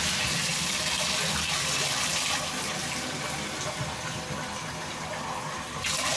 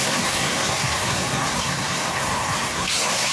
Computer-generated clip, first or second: second